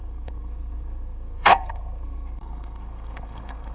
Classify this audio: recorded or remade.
remade